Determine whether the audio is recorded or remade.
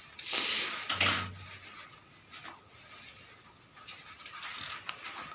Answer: recorded